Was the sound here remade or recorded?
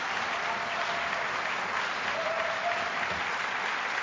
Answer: recorded